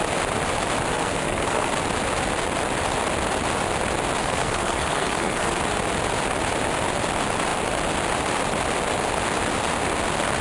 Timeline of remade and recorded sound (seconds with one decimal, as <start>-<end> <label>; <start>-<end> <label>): 0.0-0.9 recorded; 0.9-1.7 remade; 1.7-4.2 recorded; 4.2-5.6 remade; 5.6-10.4 recorded

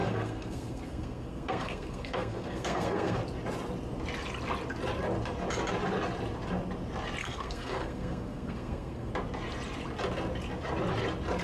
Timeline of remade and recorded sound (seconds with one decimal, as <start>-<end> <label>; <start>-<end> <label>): 0.0-3.2 remade; 3.2-7.2 recorded; 7.2-9.1 remade; 9.1-11.4 recorded

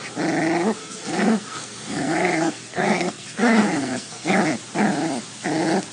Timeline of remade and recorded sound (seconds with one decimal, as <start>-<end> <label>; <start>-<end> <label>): 0.0-0.8 recorded; 0.8-4.3 remade; 4.3-5.9 recorded

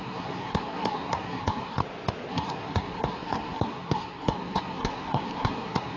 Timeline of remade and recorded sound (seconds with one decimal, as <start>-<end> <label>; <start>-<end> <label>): 0.0-1.8 remade; 1.8-2.3 recorded; 2.3-6.0 remade

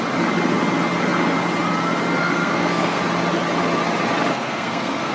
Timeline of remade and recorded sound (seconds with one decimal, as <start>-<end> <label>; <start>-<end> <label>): 0.0-2.2 recorded; 2.2-3.0 remade; 3.0-4.3 recorded; 4.3-5.1 remade

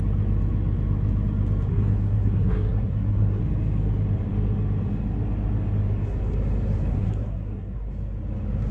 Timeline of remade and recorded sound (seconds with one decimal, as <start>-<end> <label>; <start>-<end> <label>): 0.0-1.7 recorded; 1.7-3.4 remade; 3.4-6.9 recorded; 6.9-7.9 remade; 7.9-8.7 recorded

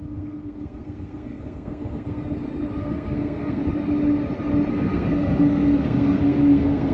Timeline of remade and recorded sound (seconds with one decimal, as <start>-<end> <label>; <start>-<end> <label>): 0.0-2.2 remade; 2.2-2.8 recorded; 2.8-3.6 remade; 3.6-4.7 recorded; 4.7-6.9 remade

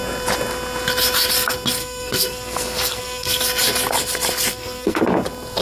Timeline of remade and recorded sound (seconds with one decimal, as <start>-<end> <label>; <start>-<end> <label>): 0.0-1.8 recorded; 1.8-3.4 remade; 3.4-4.5 recorded; 4.5-5.0 remade; 5.0-5.6 recorded